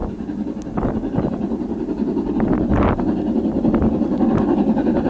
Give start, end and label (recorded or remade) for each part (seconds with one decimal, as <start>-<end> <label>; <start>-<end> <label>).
0.0-5.1 recorded